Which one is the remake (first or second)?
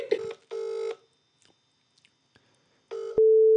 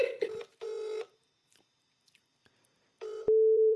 second